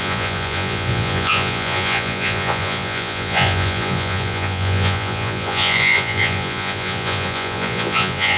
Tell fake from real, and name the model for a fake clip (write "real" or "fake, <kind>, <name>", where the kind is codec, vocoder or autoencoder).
fake, vocoder, Vocos